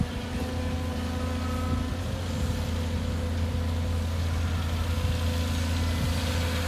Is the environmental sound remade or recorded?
recorded